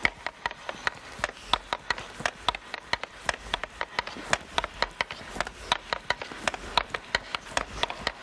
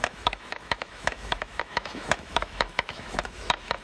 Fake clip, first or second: second